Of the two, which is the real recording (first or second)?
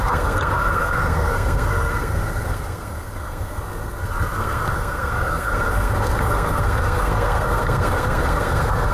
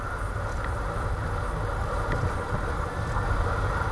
second